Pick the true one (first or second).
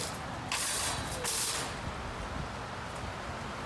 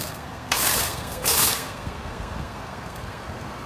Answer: first